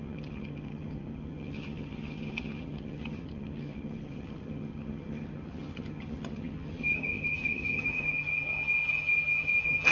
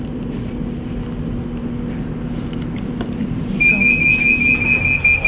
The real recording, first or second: second